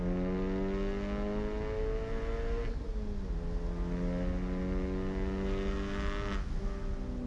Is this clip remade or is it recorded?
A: recorded